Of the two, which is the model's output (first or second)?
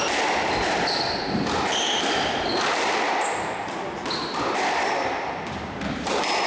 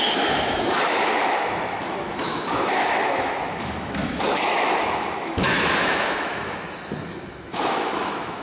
second